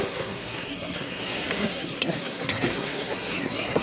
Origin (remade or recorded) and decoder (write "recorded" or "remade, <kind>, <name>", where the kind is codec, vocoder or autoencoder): remade, codec, SNAC